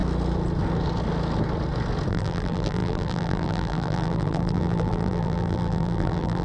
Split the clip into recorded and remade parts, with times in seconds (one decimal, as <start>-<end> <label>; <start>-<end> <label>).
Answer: 0.0-2.1 recorded; 2.1-6.4 remade